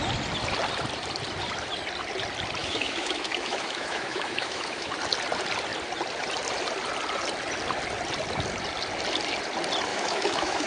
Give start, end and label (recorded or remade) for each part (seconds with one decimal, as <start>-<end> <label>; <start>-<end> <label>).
0.0-2.6 recorded; 2.6-4.9 remade; 4.9-9.9 recorded; 9.9-10.7 remade